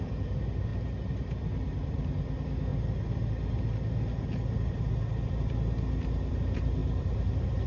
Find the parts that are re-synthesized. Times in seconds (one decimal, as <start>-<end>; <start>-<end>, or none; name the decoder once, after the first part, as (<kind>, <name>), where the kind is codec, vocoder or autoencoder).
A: 0.0-0.7 (vocoder, BigVGAN v2); 1.4-2.7; 4.7-7.7